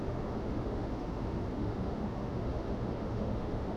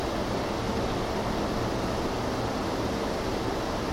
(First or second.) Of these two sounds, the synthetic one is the first